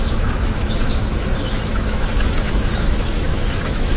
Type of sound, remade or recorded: remade